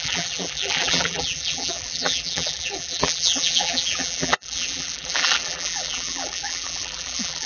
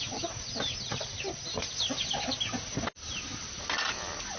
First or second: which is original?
second